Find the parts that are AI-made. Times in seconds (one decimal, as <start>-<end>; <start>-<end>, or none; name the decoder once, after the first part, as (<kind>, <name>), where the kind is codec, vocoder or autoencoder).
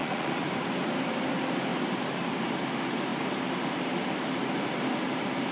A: 0.0-0.5 (vocoder, Vocos)